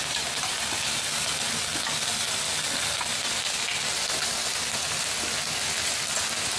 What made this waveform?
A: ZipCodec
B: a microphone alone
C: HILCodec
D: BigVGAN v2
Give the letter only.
B